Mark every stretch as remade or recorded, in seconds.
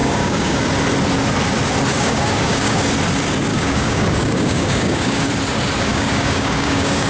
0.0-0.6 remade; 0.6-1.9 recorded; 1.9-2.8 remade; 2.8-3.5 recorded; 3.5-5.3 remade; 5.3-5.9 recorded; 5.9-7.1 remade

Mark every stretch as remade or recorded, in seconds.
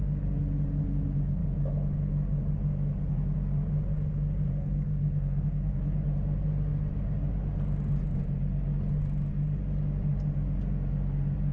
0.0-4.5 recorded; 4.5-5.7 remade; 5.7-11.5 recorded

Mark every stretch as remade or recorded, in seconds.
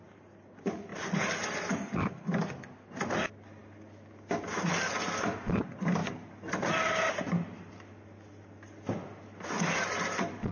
0.0-10.5 recorded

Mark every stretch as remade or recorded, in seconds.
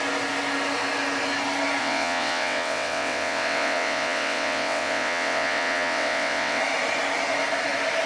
0.0-1.8 recorded; 1.8-6.6 remade; 6.6-8.1 recorded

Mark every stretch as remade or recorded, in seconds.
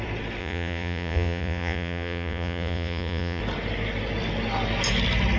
0.0-0.4 recorded; 0.4-3.4 remade; 3.4-5.4 recorded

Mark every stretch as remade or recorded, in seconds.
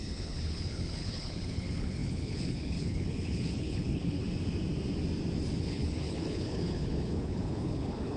0.0-4.2 remade; 4.2-5.6 recorded; 5.6-8.2 remade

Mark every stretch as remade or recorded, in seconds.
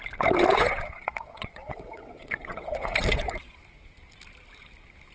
0.0-0.5 recorded; 0.5-3.6 remade; 3.6-5.1 recorded